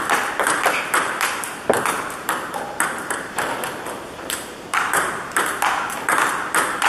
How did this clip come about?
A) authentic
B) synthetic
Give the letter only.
B